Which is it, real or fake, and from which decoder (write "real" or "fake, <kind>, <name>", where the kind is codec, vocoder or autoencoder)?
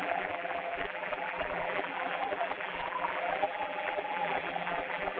fake, vocoder, BigVGAN v2